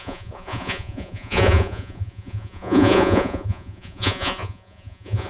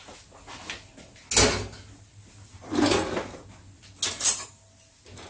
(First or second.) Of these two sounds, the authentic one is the second